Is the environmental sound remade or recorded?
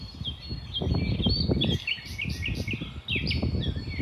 recorded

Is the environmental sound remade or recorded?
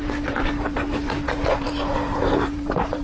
remade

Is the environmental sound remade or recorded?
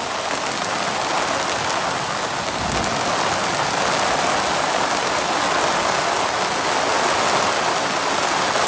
recorded